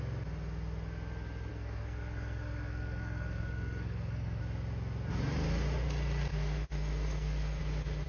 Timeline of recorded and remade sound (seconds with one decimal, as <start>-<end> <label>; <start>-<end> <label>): 0.0-1.5 recorded; 1.5-4.4 remade; 4.4-6.3 recorded; 6.3-7.6 remade; 7.6-8.1 recorded